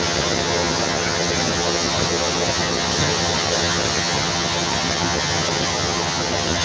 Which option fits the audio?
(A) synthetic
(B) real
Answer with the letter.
A